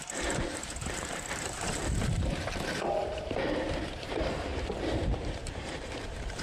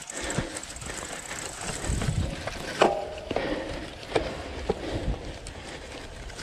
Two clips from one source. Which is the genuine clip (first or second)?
second